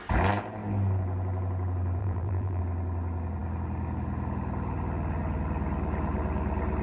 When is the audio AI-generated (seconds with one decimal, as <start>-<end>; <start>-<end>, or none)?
2.0-2.6